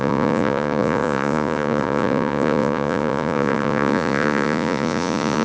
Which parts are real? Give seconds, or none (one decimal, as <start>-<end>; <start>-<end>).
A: none